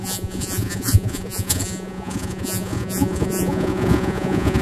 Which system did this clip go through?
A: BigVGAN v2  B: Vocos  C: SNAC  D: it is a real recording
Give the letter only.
B